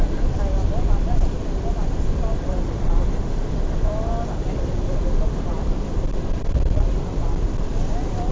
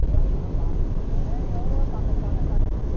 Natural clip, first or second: second